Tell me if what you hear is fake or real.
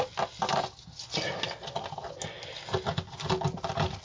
real